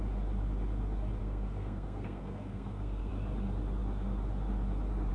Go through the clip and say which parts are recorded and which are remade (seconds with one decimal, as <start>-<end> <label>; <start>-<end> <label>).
0.0-1.2 recorded; 1.2-3.1 remade; 3.1-5.1 recorded

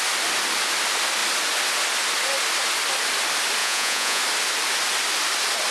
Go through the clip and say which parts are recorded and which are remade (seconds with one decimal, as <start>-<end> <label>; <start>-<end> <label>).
0.0-3.6 recorded; 3.6-4.2 remade; 4.2-5.7 recorded

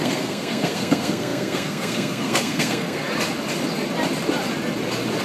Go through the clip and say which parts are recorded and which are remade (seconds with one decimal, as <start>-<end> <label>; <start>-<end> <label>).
0.0-3.0 remade; 3.0-5.2 recorded

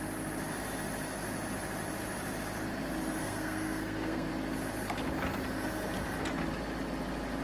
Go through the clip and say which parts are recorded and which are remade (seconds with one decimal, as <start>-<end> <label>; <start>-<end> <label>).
0.0-3.2 recorded; 3.2-4.3 remade; 4.3-7.4 recorded